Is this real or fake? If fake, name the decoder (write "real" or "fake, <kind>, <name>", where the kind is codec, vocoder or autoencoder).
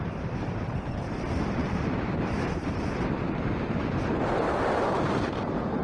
fake, vocoder, BigVGAN v2